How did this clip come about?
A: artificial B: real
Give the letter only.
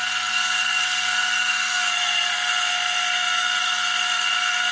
A